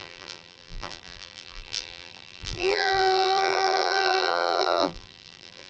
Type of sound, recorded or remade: remade